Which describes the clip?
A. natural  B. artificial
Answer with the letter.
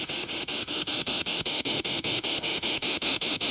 B